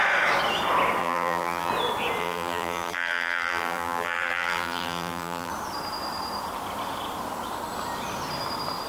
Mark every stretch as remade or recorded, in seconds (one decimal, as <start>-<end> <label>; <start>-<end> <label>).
0.0-1.0 recorded; 1.0-1.7 remade; 1.7-2.2 recorded; 2.2-5.5 remade; 5.5-8.9 recorded